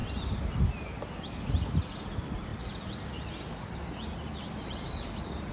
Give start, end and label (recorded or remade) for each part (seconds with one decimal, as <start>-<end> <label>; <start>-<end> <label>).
0.0-0.6 remade; 0.6-2.5 recorded; 2.5-5.5 remade